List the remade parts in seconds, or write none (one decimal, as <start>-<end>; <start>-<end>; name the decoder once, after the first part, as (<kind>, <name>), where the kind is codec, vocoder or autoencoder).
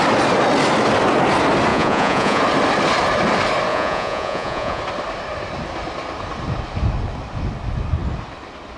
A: 1.7-2.4 (vocoder, Vocos); 3.7-4.8